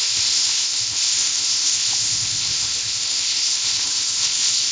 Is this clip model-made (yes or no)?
yes